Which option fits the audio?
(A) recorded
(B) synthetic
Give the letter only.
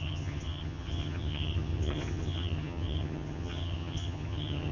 B